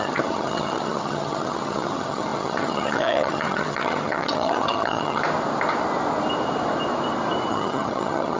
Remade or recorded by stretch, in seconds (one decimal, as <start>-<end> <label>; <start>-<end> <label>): 0.0-5.2 remade; 5.2-7.5 recorded; 7.5-8.4 remade